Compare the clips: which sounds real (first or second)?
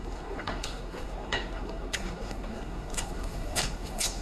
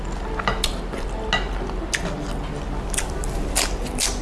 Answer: second